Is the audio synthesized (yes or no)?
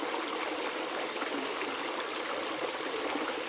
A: no